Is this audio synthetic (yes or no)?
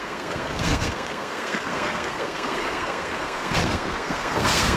yes